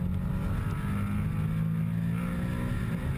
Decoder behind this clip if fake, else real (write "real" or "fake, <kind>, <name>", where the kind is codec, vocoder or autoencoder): real